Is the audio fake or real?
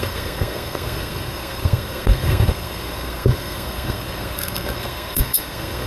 fake